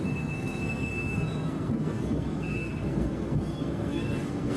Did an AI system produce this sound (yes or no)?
yes